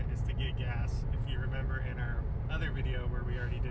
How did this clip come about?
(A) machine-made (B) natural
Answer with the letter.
B